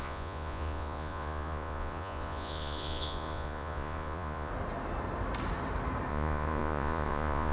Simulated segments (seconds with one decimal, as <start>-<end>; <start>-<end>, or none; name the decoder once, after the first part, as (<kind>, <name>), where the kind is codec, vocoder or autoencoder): 0.0-4.5 (vocoder, Vocos); 6.1-7.5